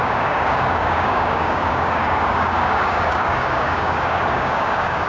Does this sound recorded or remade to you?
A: remade